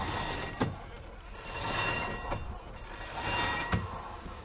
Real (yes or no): yes